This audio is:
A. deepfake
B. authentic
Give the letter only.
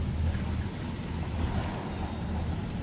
B